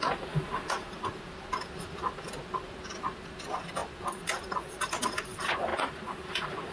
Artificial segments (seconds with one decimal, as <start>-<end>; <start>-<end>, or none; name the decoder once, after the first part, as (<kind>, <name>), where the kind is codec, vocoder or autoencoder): none